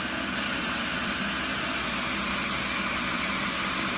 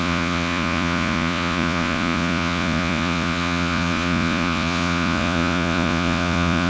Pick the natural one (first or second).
first